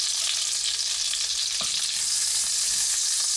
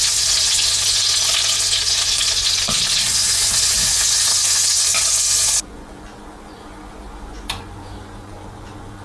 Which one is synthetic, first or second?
second